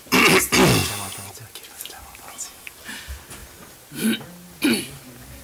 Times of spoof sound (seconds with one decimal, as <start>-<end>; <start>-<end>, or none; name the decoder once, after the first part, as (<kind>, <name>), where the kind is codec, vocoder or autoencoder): none